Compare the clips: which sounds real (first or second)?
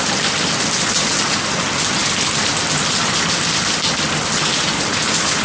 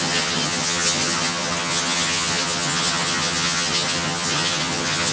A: first